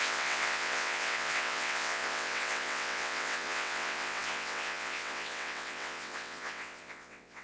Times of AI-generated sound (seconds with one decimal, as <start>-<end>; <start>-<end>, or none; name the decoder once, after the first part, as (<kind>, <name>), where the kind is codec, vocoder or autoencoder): 0.0-7.4 (vocoder, WaveNeXt)